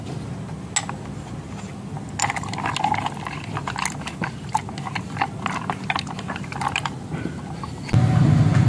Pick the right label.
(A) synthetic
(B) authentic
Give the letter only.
B